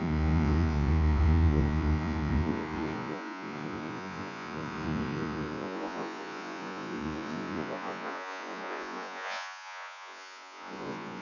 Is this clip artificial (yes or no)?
yes